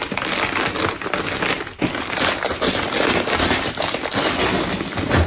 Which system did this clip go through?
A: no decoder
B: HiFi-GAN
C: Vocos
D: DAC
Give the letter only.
A